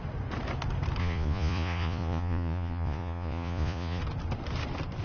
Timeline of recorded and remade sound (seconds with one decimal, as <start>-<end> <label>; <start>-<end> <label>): 0.0-1.0 recorded; 1.0-4.0 remade; 4.0-5.0 recorded

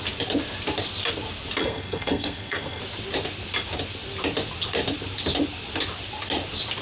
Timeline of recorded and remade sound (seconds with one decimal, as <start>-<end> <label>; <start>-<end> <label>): 0.0-1.6 recorded; 1.6-2.8 remade; 2.8-6.8 recorded

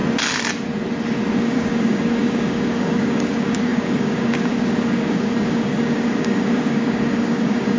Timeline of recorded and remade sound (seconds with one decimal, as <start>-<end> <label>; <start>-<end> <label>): 0.0-1.4 recorded; 1.4-7.8 remade

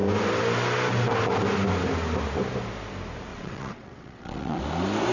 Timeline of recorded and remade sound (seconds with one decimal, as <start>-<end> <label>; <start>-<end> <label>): 0.0-3.3 recorded; 3.3-4.6 remade; 4.6-5.1 recorded

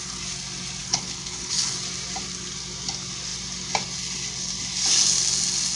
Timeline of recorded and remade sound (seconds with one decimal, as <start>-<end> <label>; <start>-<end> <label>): 0.0-0.8 recorded; 0.8-1.7 remade; 1.7-5.8 recorded